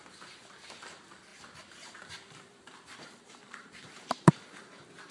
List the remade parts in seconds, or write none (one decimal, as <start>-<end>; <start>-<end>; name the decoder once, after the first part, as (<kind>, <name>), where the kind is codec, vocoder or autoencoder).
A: 1.3-4.3 (vocoder, BigVGAN v2)